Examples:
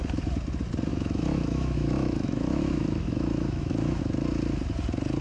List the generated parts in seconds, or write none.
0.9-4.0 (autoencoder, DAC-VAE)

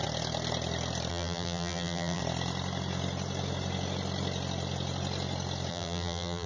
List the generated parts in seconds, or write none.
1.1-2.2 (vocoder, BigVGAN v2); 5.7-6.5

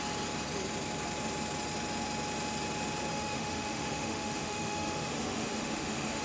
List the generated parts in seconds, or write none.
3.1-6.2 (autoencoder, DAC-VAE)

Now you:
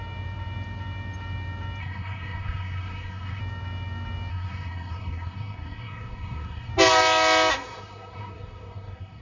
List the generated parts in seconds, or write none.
1.8-3.4 (codec, SNAC); 4.3-6.7; 7.5-9.2